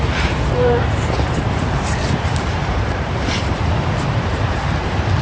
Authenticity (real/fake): fake